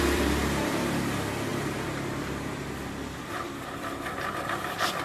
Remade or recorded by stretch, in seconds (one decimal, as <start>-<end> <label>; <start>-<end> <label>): 0.0-5.0 remade